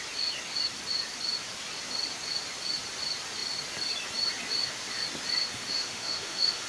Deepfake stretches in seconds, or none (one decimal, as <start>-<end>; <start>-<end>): 5.4-6.7